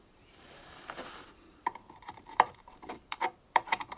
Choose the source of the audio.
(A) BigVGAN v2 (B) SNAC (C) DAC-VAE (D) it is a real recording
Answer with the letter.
A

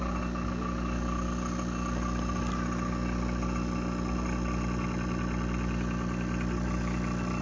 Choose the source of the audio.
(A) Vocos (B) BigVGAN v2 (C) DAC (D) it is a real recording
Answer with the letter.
D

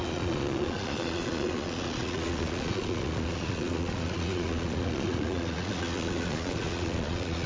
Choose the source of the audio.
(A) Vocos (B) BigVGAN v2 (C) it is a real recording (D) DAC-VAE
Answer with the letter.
A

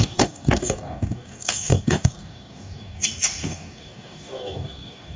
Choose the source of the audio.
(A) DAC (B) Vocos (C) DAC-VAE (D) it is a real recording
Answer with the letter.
A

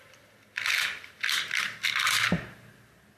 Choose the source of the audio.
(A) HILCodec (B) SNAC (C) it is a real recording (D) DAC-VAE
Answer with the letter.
C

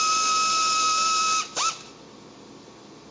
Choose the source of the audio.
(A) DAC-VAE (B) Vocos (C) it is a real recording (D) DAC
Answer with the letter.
C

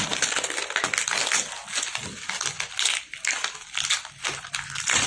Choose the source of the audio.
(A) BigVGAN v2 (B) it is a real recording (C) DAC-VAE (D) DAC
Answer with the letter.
B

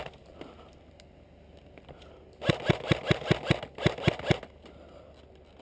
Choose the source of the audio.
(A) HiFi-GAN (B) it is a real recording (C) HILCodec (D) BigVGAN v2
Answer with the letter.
B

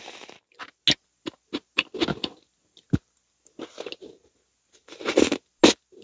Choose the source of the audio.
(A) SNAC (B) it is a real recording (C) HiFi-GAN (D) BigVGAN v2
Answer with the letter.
B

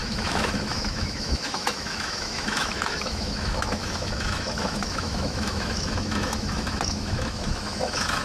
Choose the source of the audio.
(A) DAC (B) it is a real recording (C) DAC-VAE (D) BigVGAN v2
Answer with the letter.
C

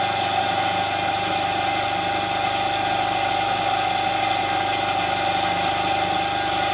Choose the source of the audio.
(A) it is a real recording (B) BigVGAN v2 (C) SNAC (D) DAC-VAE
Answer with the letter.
A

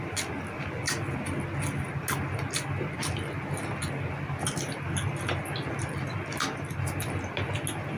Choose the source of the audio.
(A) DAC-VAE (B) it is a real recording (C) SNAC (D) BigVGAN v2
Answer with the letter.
B